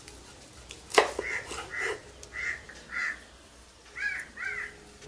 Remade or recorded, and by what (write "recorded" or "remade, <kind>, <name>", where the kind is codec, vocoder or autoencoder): recorded